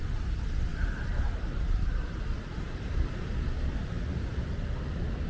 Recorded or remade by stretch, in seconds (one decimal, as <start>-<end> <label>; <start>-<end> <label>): 0.0-5.3 recorded